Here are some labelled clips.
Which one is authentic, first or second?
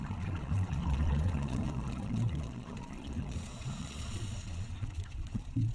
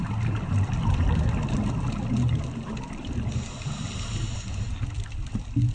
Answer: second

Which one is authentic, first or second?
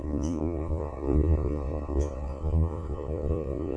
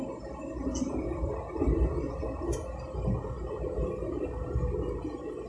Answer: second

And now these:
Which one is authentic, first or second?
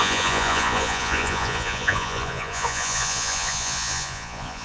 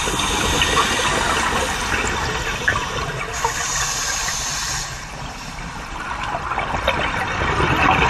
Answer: second